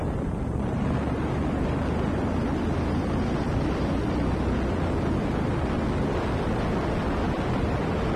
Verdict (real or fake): real